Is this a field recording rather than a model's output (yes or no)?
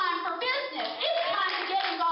yes